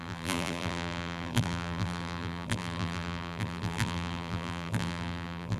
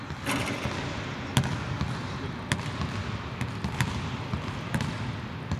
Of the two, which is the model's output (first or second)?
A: first